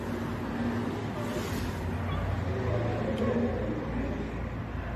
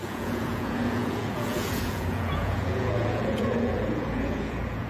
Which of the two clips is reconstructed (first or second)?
second